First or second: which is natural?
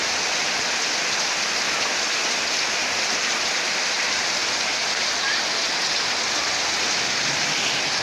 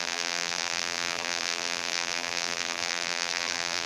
first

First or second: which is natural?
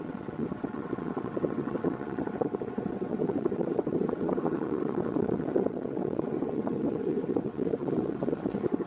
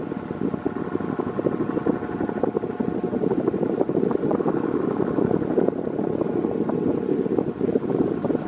second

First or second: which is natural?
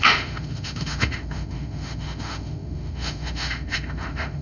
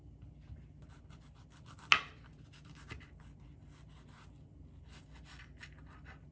second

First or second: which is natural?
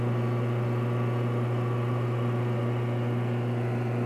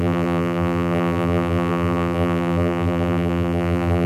first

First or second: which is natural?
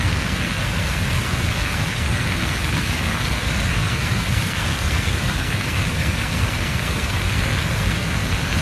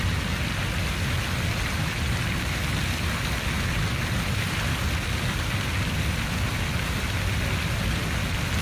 second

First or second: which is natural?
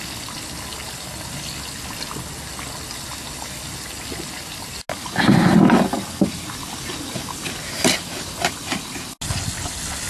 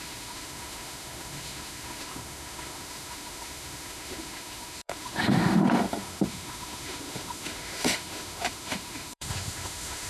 first